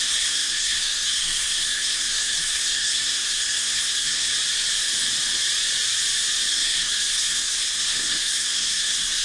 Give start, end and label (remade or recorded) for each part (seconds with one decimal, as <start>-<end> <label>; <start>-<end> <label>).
0.0-4.3 remade; 4.3-6.5 recorded; 6.5-9.2 remade